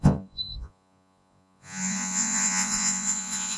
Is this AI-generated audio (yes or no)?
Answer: yes